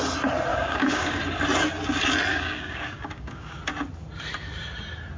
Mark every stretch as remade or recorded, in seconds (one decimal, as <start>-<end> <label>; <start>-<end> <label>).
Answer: 0.0-0.5 recorded; 0.5-1.2 remade; 1.2-2.3 recorded; 2.3-3.6 remade; 3.6-5.2 recorded